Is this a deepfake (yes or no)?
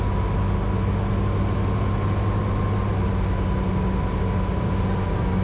no